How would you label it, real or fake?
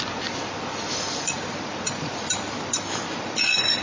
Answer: fake